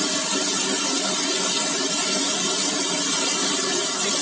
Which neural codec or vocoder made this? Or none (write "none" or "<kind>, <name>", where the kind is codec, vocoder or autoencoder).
none